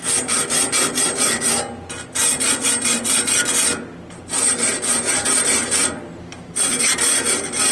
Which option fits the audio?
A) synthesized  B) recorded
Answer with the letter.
B